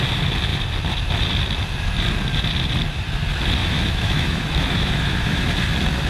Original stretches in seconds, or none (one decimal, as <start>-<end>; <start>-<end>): 0.0-3.6; 5.4-6.1